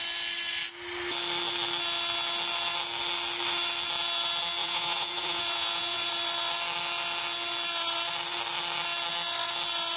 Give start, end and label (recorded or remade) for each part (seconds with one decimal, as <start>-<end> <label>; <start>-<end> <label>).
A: 0.0-4.6 recorded; 4.6-6.1 remade; 6.1-10.0 recorded